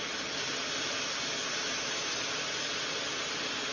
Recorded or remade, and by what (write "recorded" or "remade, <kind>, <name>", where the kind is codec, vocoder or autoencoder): recorded